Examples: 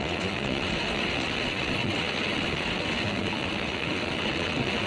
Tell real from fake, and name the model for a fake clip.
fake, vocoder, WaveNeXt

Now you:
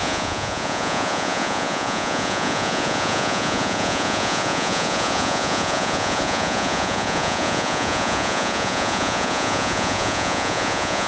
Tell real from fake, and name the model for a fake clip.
fake, vocoder, Vocos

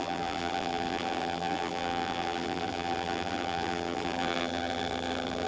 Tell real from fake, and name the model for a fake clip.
fake, vocoder, BigVGAN v2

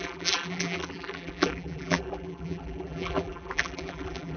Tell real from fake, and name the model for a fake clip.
fake, vocoder, BigVGAN v2